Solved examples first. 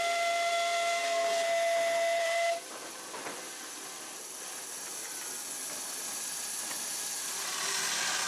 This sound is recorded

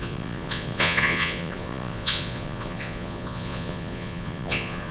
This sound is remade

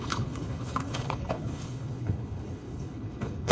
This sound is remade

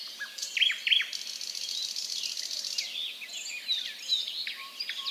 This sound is recorded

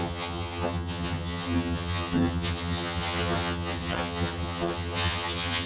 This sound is remade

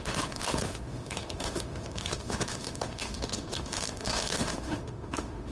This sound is remade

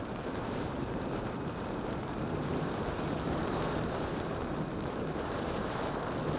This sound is remade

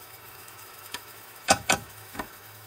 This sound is remade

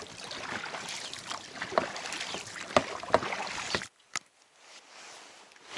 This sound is remade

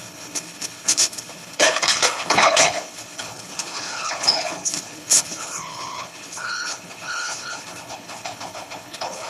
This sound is remade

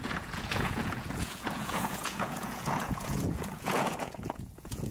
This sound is remade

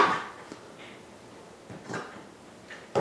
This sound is recorded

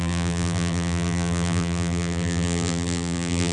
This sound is remade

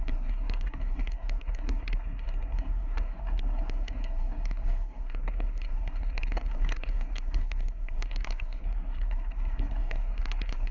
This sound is remade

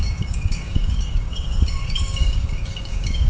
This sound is remade